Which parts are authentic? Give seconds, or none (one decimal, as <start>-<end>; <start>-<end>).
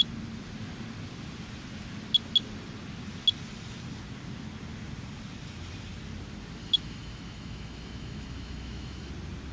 0.0-6.6; 9.1-9.5